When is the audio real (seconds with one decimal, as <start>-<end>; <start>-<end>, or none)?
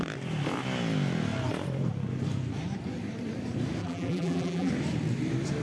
0.0-3.8; 4.7-5.6